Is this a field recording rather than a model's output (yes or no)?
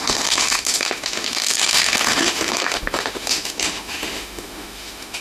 no